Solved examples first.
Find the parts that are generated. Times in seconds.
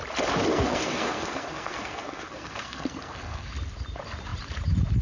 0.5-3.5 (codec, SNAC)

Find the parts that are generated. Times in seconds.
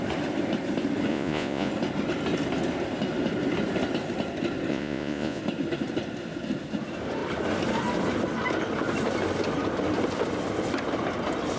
1.1-1.7 (vocoder, Vocos); 4.7-5.4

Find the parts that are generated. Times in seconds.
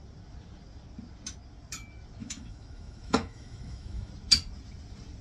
2.2-4.1 (autoencoder, DAC-VAE)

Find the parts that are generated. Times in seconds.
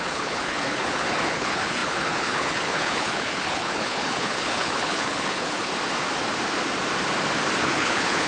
0.0-5.7 (codec, HILCodec); 7.6-8.3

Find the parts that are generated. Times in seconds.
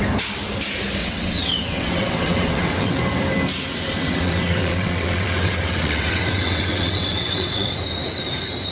1.0-3.0 (vocoder, WaveNeXt); 3.7-7.7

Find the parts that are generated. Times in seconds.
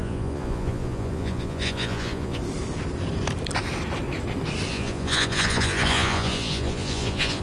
0.0-2.4 (vocoder, Vocos); 4.7-7.4